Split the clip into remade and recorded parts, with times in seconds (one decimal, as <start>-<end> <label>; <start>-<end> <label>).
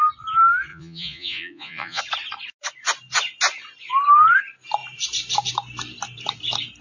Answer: 0.0-0.7 recorded; 0.7-2.0 remade; 2.0-6.8 recorded